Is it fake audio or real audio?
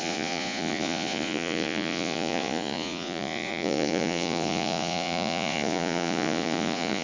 fake